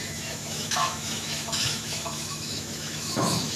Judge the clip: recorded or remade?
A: remade